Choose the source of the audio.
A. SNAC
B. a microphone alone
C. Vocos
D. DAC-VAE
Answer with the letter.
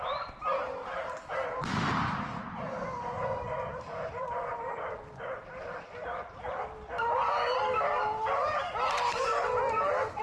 B